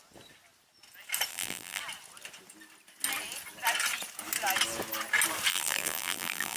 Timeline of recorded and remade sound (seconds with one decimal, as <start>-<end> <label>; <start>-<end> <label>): 0.0-1.3 recorded; 1.3-1.8 remade; 1.8-5.5 recorded; 5.5-6.6 remade